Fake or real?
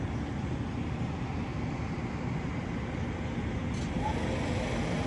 real